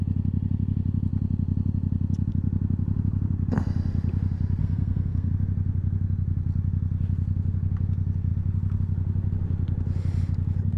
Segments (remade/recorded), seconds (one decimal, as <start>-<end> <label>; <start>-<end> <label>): 0.0-4.6 recorded; 4.6-5.3 remade; 5.3-10.8 recorded